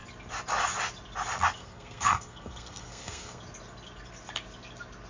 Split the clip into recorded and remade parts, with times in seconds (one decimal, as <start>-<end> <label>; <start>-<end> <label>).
0.0-1.6 recorded; 1.6-3.4 remade; 3.4-5.1 recorded